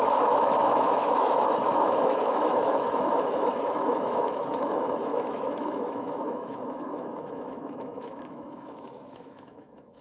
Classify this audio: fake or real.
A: fake